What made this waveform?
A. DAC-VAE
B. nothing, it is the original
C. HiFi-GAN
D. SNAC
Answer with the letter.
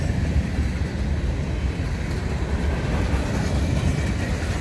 B